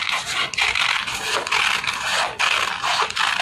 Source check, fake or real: real